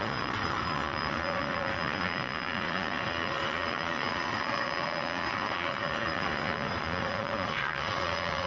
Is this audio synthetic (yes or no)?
yes